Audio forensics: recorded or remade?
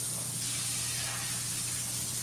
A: recorded